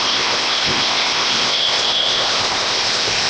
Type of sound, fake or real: fake